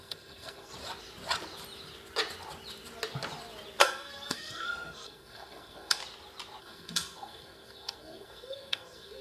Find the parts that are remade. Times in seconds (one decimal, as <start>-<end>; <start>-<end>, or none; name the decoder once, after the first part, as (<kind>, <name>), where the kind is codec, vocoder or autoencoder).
0.0-0.7 (codec, SNAC); 3.8-6.0; 6.6-9.2